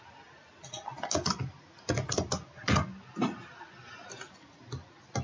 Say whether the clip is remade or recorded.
recorded